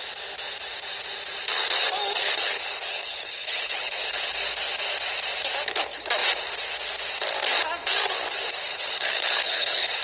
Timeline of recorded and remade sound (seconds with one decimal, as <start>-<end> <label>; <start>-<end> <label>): 0.0-2.1 recorded; 2.1-4.3 remade; 4.3-8.7 recorded; 8.7-10.0 remade